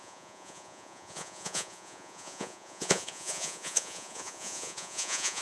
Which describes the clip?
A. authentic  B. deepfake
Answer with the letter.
B